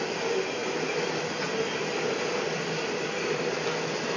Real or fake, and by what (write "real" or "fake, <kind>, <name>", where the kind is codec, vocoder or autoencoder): real